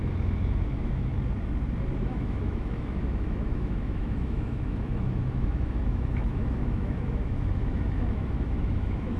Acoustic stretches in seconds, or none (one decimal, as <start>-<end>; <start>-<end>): 1.1-2.0